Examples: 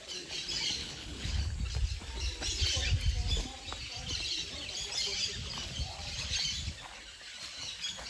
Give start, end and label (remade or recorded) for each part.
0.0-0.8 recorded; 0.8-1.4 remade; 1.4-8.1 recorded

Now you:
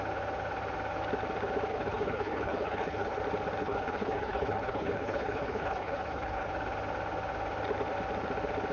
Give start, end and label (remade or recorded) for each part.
0.0-1.7 recorded; 1.7-3.2 remade; 3.2-3.6 recorded; 3.6-6.5 remade; 6.5-8.7 recorded

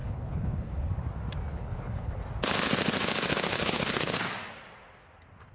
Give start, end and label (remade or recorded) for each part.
0.0-0.9 remade; 0.9-1.5 recorded; 1.5-2.2 remade; 2.2-3.5 recorded; 3.5-4.2 remade; 4.2-5.5 recorded

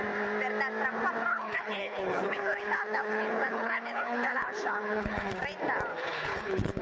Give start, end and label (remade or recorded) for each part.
0.0-1.3 recorded; 1.3-5.4 remade; 5.4-5.9 recorded; 5.9-6.8 remade

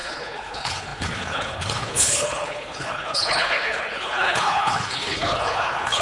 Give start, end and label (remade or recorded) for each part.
0.0-6.0 remade

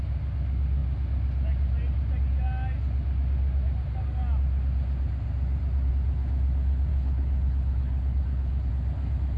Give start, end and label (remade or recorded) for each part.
0.0-6.9 recorded; 6.9-8.7 remade; 8.7-9.4 recorded

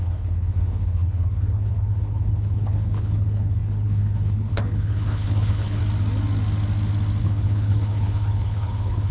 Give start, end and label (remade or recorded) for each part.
0.0-5.8 remade; 5.8-7.2 recorded; 7.2-9.1 remade

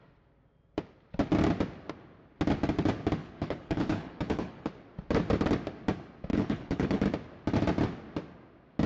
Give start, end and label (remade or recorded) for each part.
0.0-3.2 recorded; 3.2-4.7 remade; 4.7-6.3 recorded; 6.3-7.0 remade; 7.0-8.9 recorded